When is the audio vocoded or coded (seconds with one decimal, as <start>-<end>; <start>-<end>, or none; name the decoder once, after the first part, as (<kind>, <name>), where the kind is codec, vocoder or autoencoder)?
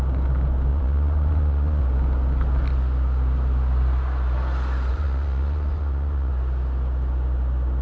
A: 0.7-1.8 (vocoder, Vocos); 4.9-6.3